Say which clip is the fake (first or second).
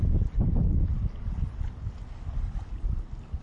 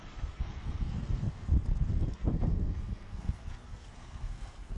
second